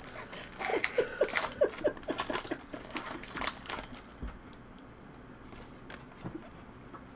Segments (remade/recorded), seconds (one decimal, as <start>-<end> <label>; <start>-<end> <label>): 0.0-0.7 recorded; 0.7-5.0 remade; 5.0-7.2 recorded